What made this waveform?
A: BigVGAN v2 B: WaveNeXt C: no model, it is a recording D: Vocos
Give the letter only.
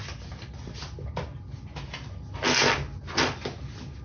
C